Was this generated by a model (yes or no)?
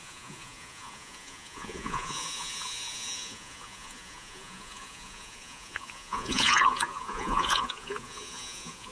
yes